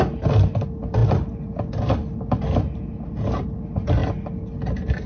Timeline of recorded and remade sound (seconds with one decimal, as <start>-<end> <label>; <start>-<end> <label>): 0.0-5.1 recorded